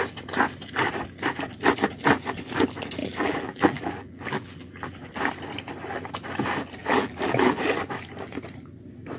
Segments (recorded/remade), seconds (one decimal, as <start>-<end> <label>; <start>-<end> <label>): 0.0-3.0 recorded; 3.0-5.1 remade; 5.1-6.8 recorded; 6.8-7.6 remade; 7.6-9.2 recorded